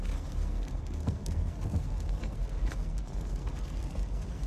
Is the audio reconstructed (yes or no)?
yes